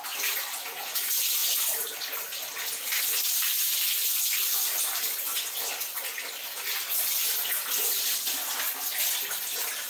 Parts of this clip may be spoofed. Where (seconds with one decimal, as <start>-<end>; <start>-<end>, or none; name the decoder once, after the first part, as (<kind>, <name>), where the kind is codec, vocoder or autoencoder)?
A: none

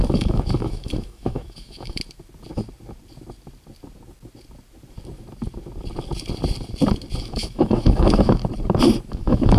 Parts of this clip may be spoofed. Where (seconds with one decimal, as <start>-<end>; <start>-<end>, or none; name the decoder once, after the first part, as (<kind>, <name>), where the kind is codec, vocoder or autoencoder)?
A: 0.0-2.0 (autoencoder, DAC-VAE); 7.2-8.4; 9.1-9.6